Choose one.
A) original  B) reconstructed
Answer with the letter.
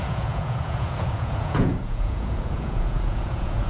B